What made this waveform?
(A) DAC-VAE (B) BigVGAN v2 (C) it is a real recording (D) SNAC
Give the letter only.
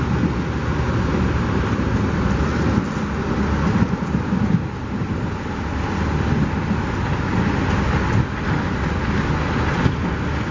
C